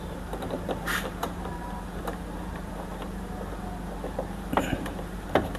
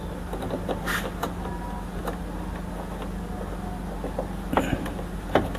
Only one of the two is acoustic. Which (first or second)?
second